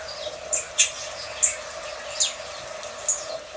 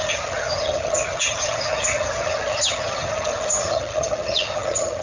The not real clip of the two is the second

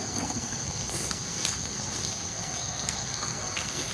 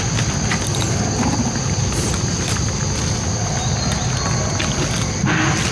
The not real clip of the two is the first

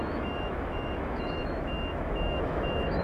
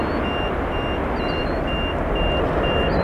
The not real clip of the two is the first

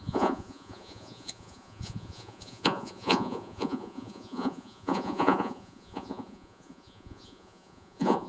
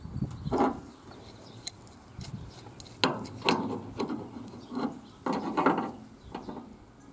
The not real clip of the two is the first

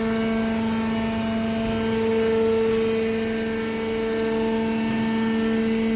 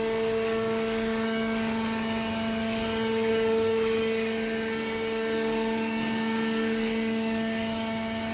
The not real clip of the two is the second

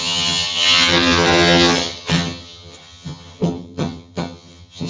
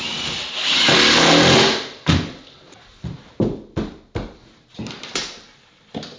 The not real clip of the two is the first